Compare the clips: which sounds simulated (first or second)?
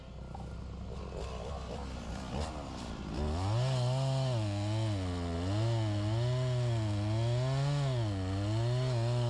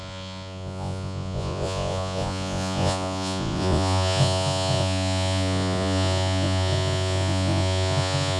second